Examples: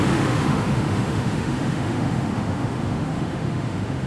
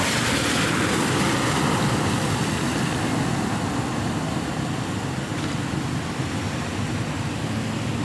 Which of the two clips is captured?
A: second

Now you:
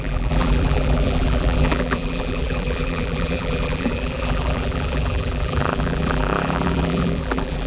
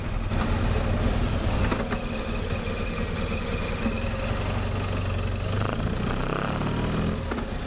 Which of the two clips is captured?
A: second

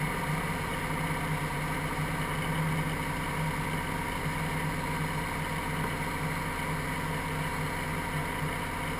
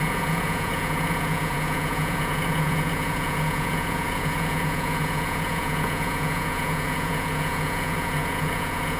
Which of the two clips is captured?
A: first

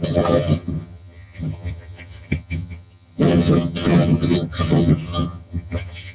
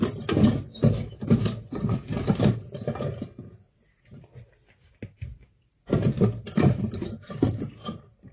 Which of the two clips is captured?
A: second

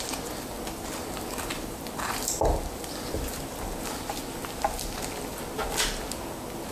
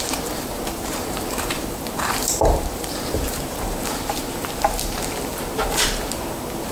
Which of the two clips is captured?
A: first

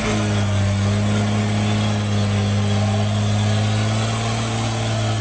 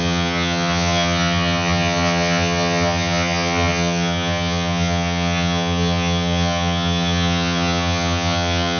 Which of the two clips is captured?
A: first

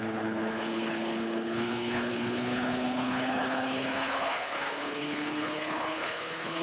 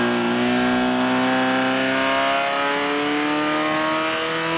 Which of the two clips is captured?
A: second